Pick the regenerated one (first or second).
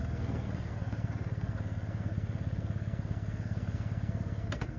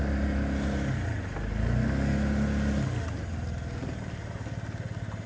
first